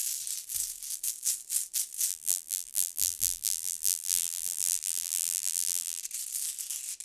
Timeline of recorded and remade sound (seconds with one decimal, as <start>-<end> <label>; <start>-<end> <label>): 0.0-2.1 recorded; 2.1-6.0 remade; 6.0-7.0 recorded